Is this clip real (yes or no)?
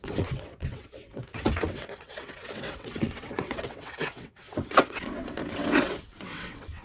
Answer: no